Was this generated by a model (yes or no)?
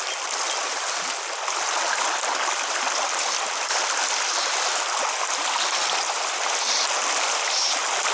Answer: no